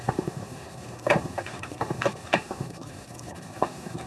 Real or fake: fake